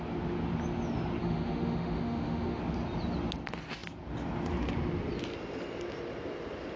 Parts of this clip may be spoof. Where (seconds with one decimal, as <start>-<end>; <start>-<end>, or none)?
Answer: 1.2-2.6